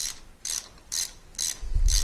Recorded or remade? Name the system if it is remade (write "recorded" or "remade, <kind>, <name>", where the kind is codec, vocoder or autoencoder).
recorded